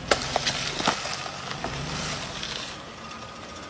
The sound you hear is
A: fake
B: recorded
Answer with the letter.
B